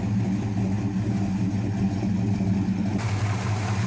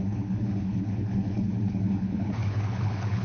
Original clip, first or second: first